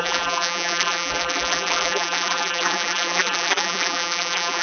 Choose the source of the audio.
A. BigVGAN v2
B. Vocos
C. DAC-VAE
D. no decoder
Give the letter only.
A